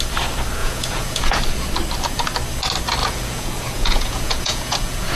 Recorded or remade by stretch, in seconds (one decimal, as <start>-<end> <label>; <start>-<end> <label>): 0.0-0.6 recorded; 0.6-1.4 remade; 1.4-3.0 recorded; 3.0-5.2 remade

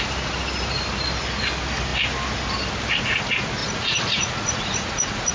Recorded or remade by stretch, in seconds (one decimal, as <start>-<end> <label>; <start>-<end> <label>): 0.0-3.6 recorded; 3.6-5.3 remade

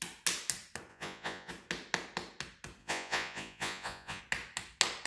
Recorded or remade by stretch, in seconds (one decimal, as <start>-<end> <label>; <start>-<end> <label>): 0.0-0.9 recorded; 0.9-1.5 remade; 1.5-2.8 recorded; 2.8-4.2 remade; 4.2-5.1 recorded

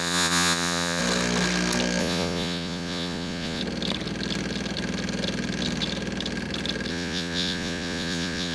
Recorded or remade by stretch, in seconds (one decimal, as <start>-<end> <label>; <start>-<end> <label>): 0.0-1.0 remade; 1.0-2.0 recorded; 2.0-3.6 remade; 3.6-6.9 recorded; 6.9-8.5 remade

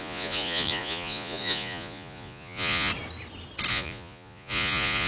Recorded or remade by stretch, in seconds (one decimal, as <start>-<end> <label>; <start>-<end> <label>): 0.0-2.9 remade; 2.9-3.7 recorded; 3.7-5.1 remade